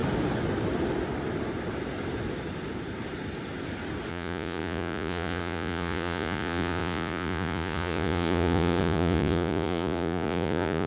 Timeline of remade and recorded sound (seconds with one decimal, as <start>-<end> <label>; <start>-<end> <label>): 0.0-4.1 recorded; 4.1-10.9 remade